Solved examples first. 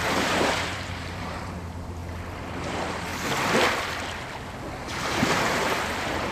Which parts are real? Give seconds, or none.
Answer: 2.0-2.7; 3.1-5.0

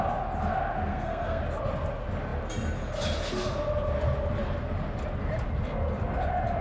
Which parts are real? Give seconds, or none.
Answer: 0.0-0.9; 1.4-6.6